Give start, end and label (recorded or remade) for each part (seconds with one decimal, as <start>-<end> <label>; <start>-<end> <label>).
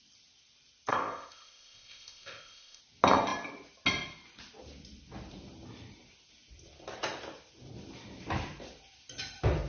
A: 0.0-0.9 recorded; 0.9-2.8 remade; 2.8-9.7 recorded